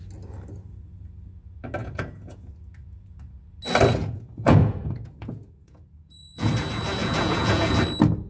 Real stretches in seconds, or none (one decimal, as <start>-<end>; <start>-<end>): 0.0-1.8; 2.5-4.0; 6.5-7.0; 7.7-8.3